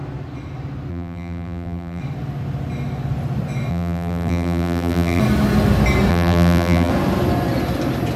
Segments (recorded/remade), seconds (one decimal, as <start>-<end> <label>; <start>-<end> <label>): 0.0-0.9 recorded; 0.9-2.0 remade; 2.0-3.7 recorded; 3.7-5.2 remade; 5.2-6.1 recorded; 6.1-6.9 remade; 6.9-8.2 recorded